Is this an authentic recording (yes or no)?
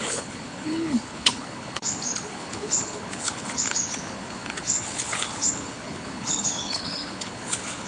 no